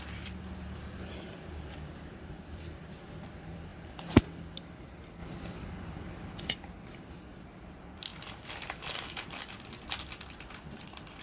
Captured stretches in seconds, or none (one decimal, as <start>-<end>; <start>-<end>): 8.1-10.5